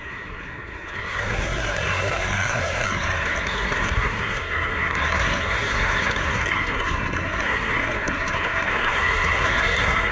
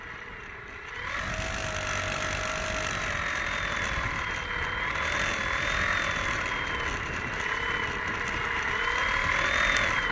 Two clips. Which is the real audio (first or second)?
second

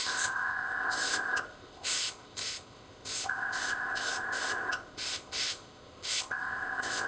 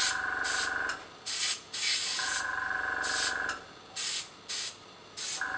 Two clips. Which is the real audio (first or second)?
second